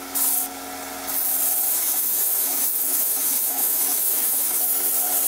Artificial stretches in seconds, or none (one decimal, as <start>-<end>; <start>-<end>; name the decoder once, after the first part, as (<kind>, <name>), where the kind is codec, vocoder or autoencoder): 1.7-4.6 (autoencoder, DAC-VAE)